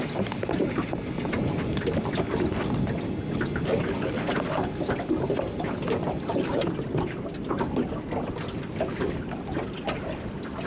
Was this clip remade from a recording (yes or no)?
no